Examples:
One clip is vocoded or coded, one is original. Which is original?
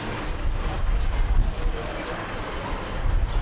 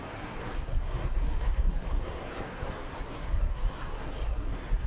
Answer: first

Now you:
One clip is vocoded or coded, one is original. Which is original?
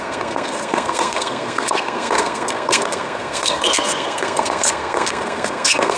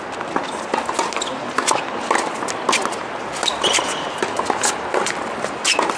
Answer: second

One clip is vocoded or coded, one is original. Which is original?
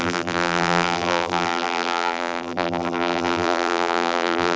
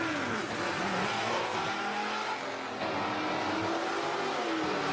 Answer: second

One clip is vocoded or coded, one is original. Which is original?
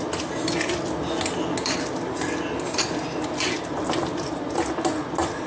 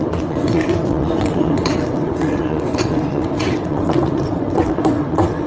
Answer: first